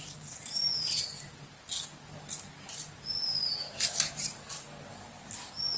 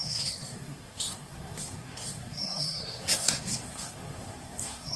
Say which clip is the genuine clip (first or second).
first